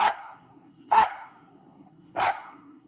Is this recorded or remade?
remade